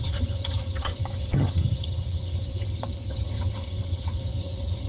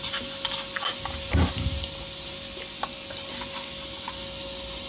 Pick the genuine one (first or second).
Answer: second